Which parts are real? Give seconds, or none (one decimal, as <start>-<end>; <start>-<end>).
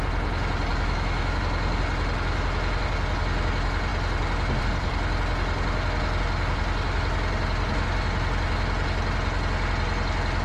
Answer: 0.0-0.7; 1.4-10.4